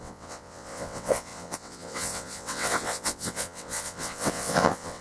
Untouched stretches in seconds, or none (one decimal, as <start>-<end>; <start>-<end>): none